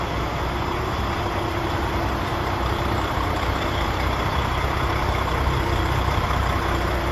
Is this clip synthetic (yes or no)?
yes